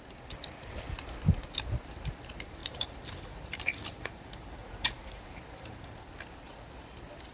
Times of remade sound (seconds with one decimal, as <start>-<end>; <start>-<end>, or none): 2.6-6.0